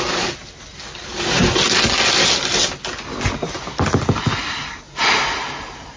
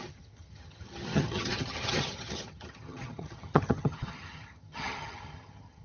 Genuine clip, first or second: first